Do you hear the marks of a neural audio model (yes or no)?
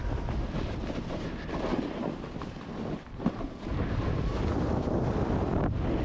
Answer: no